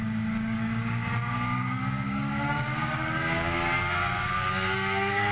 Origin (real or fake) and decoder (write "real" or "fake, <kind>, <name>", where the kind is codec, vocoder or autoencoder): fake, codec, DAC